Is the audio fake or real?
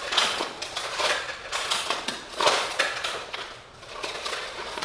fake